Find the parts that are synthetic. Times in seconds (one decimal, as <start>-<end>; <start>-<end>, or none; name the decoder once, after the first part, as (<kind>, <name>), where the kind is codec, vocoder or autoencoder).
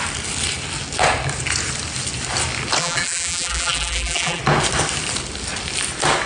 2.8-4.4 (vocoder, BigVGAN v2)